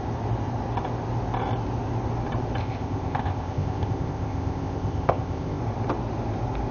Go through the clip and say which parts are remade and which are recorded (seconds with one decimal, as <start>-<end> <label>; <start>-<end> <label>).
0.0-2.6 recorded; 2.6-5.6 remade; 5.6-6.7 recorded